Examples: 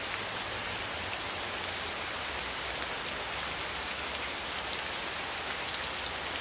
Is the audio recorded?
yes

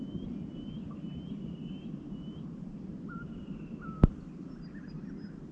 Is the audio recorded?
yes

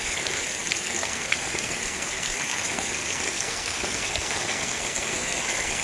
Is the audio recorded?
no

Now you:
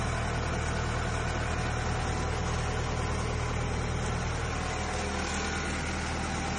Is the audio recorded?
yes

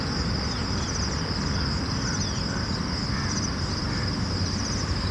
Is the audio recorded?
yes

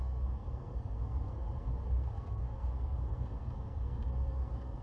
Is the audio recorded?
no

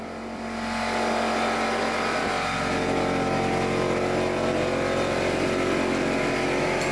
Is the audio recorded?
yes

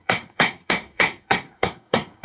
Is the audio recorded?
no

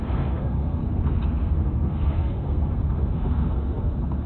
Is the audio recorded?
no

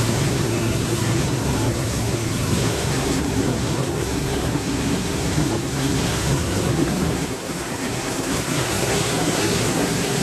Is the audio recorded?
no